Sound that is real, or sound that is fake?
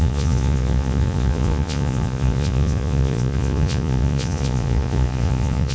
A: fake